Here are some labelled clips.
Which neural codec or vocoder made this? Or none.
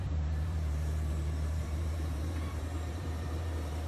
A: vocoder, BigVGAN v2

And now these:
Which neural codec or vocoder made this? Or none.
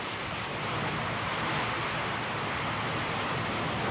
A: none